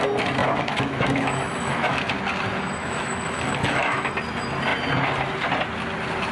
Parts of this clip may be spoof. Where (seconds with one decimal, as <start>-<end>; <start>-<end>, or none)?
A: 0.4-2.1; 2.8-4.1

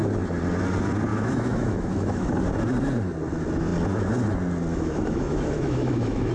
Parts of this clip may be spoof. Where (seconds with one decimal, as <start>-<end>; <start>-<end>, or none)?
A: 1.1-2.4; 4.7-6.3

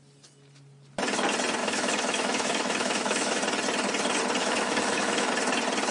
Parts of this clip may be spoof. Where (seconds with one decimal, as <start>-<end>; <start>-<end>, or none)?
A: 1.6-3.4; 4.4-5.3

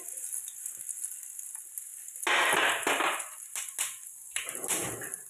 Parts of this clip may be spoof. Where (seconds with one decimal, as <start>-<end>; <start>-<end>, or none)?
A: none

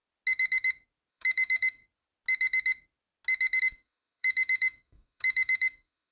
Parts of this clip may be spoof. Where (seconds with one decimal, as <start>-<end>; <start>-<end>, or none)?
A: 1.1-1.8; 3.6-6.1

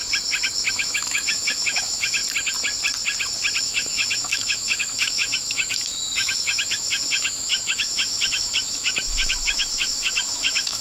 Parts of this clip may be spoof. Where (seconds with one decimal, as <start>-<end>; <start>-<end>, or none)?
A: 0.7-2.2; 3.6-10.8

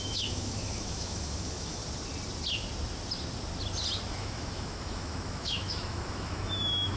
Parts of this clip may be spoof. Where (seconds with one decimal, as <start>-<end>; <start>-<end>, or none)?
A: 0.0-1.8; 4.1-7.0